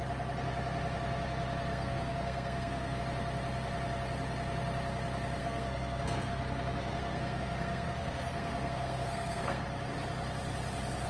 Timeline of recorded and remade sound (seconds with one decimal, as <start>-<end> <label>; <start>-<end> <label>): 0.0-1.7 recorded; 1.7-3.0 remade; 3.0-5.4 recorded; 5.4-9.6 remade; 9.6-11.1 recorded